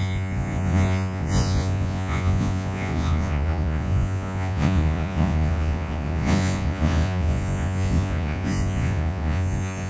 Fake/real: fake